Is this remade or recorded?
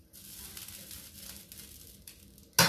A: recorded